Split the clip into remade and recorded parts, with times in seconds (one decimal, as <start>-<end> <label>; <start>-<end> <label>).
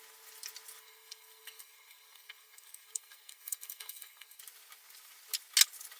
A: 0.0-0.8 recorded; 0.8-4.4 remade; 4.4-6.0 recorded